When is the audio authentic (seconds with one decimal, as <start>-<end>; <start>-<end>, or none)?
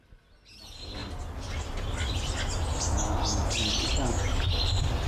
0.0-5.1